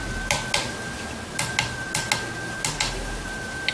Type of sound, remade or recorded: recorded